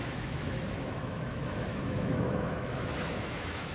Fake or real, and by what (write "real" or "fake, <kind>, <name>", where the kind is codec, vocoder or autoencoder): fake, autoencoder, DAC-VAE